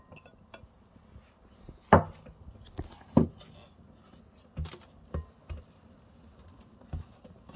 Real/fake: real